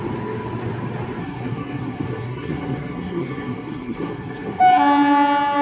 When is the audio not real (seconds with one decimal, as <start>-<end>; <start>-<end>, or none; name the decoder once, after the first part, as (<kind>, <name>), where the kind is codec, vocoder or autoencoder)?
1.2-4.6 (codec, SNAC)